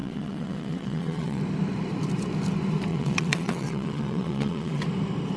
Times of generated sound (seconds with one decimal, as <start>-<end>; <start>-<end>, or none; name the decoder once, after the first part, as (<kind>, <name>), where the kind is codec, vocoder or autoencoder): 0.0-1.4 (vocoder, WaveNeXt); 2.9-4.8

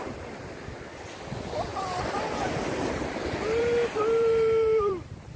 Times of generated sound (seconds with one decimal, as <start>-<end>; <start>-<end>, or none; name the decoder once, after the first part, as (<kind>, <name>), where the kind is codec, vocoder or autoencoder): 1.7-4.9 (vocoder, BigVGAN v2)